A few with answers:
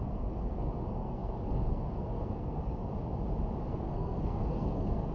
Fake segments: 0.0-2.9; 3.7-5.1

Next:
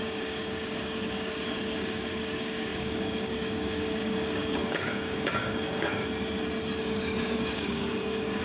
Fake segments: 0.0-6.0; 6.8-8.4

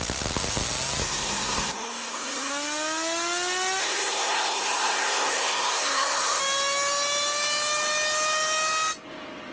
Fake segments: 1.0-2.5; 3.8-6.4

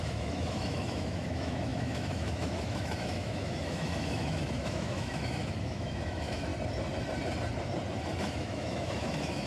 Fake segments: 0.0-6.5; 8.2-9.5